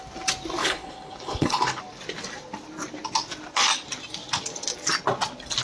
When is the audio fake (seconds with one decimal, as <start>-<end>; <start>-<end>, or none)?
0.6-1.8